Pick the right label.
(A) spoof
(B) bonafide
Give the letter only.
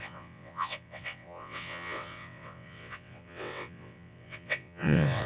A